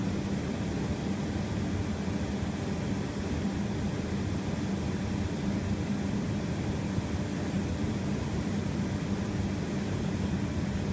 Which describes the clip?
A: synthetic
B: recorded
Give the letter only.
B